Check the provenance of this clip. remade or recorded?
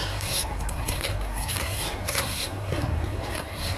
remade